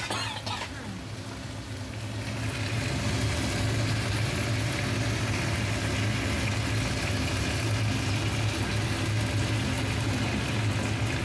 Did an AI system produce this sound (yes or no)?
no